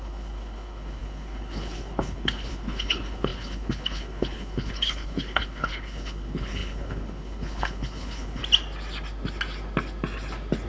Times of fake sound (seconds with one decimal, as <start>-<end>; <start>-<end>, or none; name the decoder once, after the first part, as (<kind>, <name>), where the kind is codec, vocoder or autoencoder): 0.0-8.4 (codec, HILCodec)

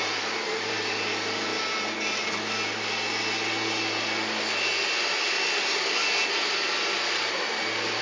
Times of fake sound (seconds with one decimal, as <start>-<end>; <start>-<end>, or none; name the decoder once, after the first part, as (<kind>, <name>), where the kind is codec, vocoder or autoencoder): 0.0-1.5 (vocoder, BigVGAN v2); 6.3-8.0

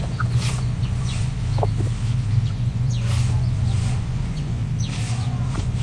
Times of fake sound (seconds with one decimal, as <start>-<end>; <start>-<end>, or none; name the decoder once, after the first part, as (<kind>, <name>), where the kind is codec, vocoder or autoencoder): 0.0-1.5 (vocoder, Vocos); 2.5-4.6; 5.1-5.8

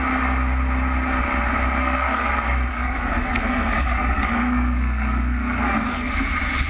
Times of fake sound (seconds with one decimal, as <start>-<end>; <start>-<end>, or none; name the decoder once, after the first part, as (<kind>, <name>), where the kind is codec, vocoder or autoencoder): 1.8-2.3 (codec, SNAC); 2.7-6.1